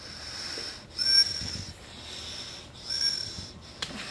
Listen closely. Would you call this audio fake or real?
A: real